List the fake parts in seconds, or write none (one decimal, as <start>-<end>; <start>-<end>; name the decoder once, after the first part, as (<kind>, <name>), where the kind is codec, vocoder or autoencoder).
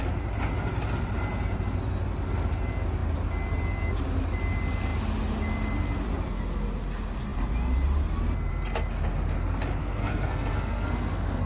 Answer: 9.8-11.5 (codec, SNAC)